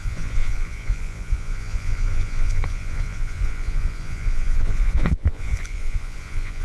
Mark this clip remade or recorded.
remade